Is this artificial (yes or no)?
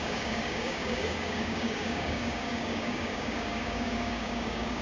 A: yes